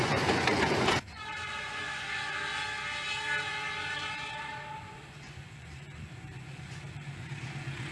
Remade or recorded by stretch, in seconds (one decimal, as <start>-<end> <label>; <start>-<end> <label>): 0.0-2.6 remade; 2.6-3.4 recorded; 3.4-7.9 remade